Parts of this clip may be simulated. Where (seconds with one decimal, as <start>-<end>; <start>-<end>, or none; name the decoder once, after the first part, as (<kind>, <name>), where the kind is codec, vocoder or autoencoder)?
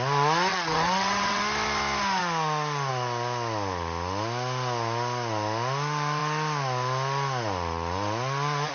0.5-1.4 (vocoder, WaveNeXt)